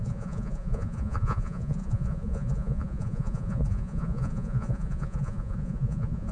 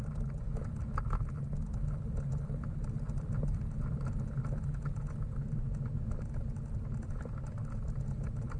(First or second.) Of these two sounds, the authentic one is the second